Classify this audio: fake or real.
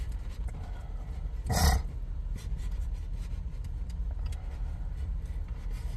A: fake